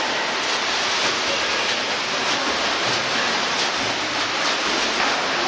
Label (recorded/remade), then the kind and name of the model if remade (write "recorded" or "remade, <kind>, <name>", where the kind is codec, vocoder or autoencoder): recorded